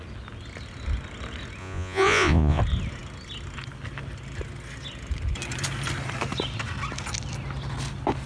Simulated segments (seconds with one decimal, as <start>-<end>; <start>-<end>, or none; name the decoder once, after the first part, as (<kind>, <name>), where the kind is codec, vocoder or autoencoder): 1.6-2.6 (vocoder, Vocos)